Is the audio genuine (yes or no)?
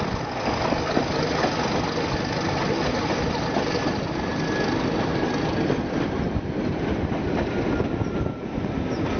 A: yes